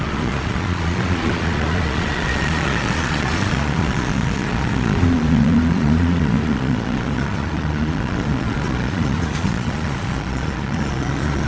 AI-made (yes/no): yes